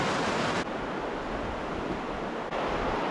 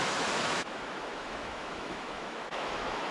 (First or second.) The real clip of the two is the first